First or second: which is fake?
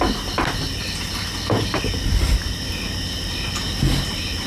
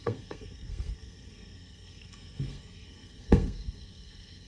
second